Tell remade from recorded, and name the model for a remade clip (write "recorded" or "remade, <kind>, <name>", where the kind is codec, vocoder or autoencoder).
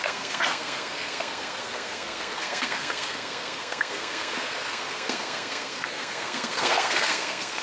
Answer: remade, codec, SNAC